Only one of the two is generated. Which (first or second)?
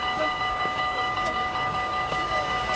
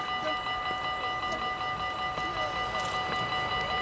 first